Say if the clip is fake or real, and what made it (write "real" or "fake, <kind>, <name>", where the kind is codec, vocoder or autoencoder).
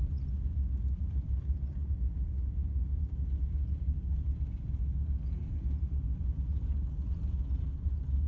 real